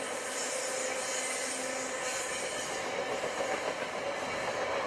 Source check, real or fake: real